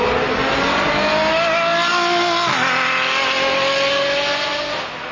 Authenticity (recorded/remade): recorded